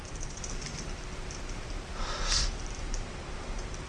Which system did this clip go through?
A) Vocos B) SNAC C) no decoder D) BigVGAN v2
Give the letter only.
C